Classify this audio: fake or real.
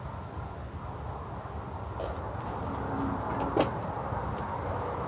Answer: real